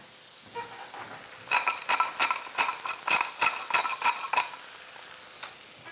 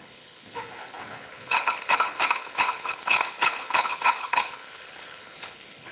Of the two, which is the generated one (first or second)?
second